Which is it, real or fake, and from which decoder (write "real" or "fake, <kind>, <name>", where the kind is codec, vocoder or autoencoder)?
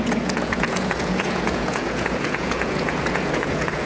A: fake, vocoder, Vocos